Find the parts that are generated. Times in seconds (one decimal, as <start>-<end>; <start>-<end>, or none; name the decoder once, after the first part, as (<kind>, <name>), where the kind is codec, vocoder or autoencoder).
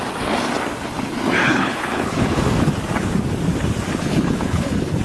1.4-2.4 (codec, HILCodec); 4.1-5.0